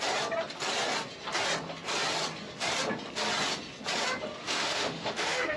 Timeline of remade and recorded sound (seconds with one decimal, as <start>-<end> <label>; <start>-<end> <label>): 0.0-4.4 recorded; 4.4-5.6 remade

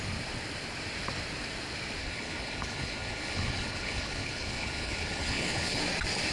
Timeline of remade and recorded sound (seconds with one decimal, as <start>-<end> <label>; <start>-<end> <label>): 0.0-2.0 recorded; 2.0-5.8 remade; 5.8-6.3 recorded

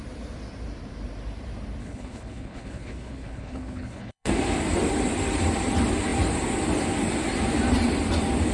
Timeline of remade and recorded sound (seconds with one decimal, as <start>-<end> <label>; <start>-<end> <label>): 0.0-1.8 recorded; 1.8-4.3 remade; 4.3-8.5 recorded

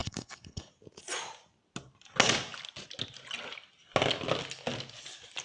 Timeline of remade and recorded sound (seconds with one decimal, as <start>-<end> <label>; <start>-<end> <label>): 0.0-0.7 remade; 0.7-5.4 recorded

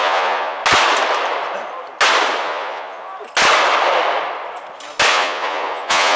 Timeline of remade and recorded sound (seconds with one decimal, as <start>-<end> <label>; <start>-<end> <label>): 0.0-0.6 remade; 0.6-2.4 recorded; 2.4-3.1 remade; 3.1-5.1 recorded; 5.1-6.2 remade

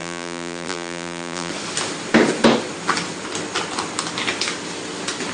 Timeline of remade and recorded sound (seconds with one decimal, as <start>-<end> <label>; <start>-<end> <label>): 0.0-1.5 remade; 1.5-5.3 recorded

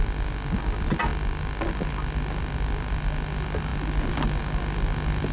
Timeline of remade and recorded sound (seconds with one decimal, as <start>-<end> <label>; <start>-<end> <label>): 0.0-5.3 recorded

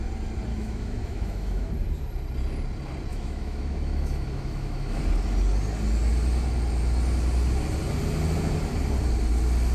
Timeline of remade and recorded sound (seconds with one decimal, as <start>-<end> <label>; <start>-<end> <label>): 0.0-0.5 recorded; 0.5-1.7 remade; 1.7-3.1 recorded; 3.1-5.0 remade; 5.0-9.7 recorded